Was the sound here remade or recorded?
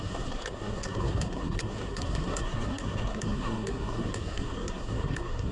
remade